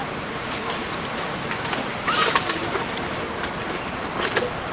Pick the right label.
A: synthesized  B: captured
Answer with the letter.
B